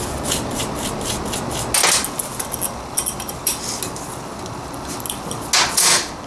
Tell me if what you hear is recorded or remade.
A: recorded